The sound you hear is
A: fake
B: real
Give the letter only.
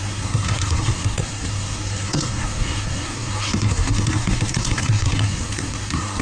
A